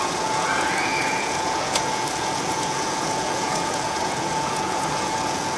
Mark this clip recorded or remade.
remade